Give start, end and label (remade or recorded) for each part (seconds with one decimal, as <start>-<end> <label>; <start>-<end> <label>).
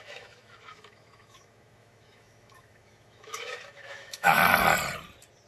0.0-4.4 remade; 4.4-5.5 recorded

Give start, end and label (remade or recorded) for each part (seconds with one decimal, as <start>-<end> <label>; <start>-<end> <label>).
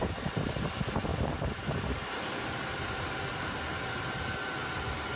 0.0-1.1 recorded; 1.1-4.2 remade; 4.2-5.2 recorded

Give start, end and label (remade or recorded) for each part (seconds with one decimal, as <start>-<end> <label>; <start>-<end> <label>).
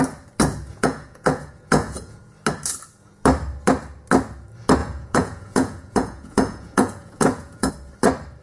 0.0-0.7 recorded; 0.7-2.2 remade; 2.2-4.8 recorded; 4.8-7.7 remade; 7.7-8.4 recorded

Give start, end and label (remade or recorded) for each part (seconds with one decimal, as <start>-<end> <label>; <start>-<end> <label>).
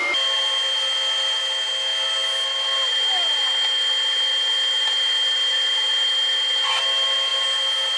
0.0-8.0 recorded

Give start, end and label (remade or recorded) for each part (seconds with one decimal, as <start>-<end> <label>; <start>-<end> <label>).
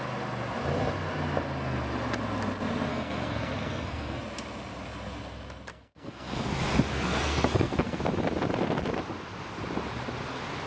0.0-2.9 recorded; 2.9-4.2 remade; 4.2-5.7 recorded; 5.7-6.5 remade; 6.5-6.9 recorded; 6.9-8.0 remade; 8.0-10.7 recorded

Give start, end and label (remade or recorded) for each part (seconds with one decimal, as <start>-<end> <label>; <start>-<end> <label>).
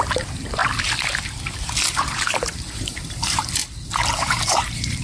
0.0-0.6 remade; 0.6-1.2 recorded; 1.2-3.6 remade; 3.6-4.2 recorded; 4.2-5.0 remade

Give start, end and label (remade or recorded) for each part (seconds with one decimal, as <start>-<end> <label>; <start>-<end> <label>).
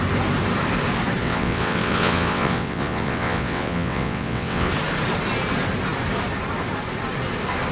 0.0-1.2 recorded; 1.2-4.7 remade; 4.7-7.7 recorded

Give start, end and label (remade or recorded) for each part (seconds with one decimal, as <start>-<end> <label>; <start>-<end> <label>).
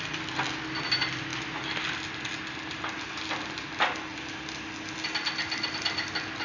0.0-6.4 recorded